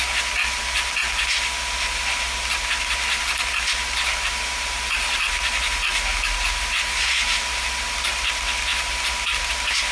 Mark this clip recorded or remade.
recorded